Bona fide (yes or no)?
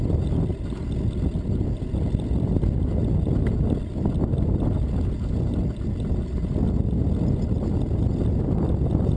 yes